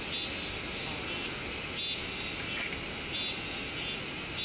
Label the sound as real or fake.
real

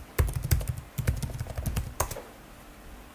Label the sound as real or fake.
real